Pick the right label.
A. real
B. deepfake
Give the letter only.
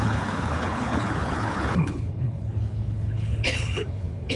B